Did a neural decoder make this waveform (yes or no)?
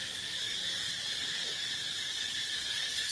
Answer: yes